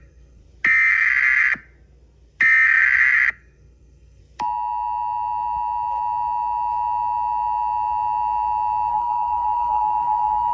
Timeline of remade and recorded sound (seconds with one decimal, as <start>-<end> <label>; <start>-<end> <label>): 0.0-0.4 remade; 0.4-3.3 recorded; 3.3-4.2 remade; 4.2-8.9 recorded; 8.9-10.5 remade